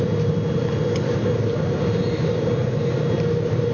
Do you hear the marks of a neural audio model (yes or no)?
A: no